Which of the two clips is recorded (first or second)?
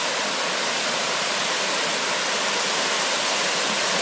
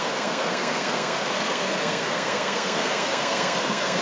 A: first